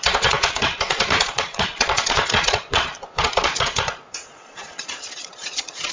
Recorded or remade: remade